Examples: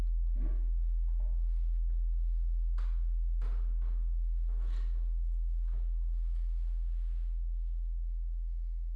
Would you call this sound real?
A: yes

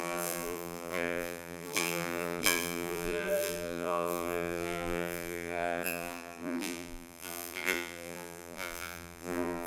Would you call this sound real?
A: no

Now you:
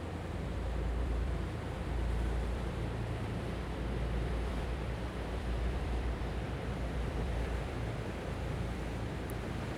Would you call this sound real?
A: no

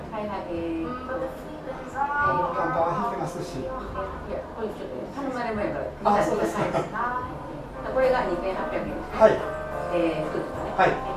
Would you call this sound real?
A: yes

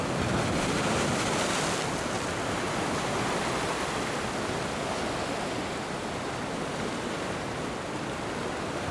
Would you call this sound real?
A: yes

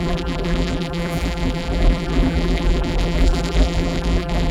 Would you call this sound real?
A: no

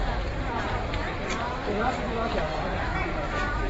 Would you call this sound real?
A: no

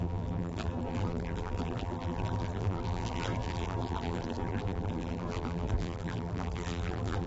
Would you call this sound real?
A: no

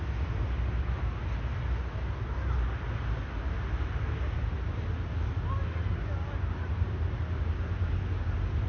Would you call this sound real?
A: yes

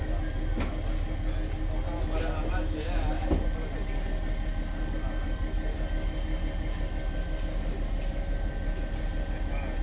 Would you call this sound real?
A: yes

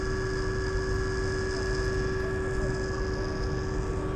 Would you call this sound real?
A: yes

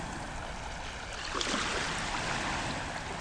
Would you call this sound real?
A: yes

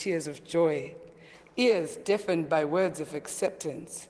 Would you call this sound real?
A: no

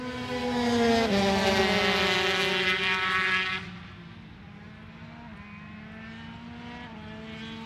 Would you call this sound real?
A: yes